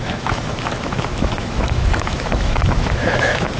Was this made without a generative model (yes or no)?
no